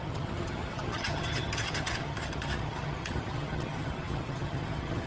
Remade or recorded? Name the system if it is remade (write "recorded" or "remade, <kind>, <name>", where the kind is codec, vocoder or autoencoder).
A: remade, vocoder, HiFi-GAN